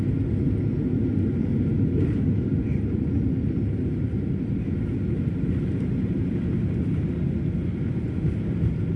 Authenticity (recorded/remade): recorded